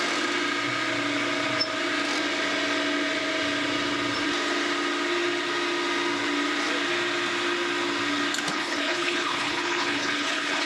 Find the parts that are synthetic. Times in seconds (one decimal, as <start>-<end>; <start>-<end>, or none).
8.5-10.7